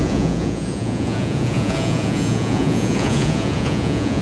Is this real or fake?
fake